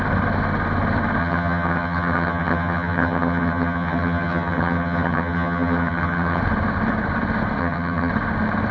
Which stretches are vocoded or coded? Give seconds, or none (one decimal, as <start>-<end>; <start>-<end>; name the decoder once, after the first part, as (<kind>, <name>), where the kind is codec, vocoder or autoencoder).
1.2-6.4 (vocoder, HiFi-GAN); 7.6-8.1

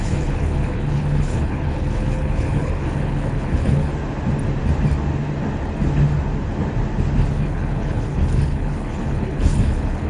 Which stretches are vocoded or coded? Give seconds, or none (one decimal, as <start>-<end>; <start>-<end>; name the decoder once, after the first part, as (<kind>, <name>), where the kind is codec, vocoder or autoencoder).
0.0-3.9 (codec, HILCodec); 7.3-10.1